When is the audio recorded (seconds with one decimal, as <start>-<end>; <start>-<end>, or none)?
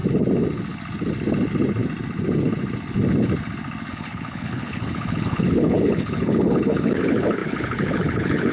0.0-3.9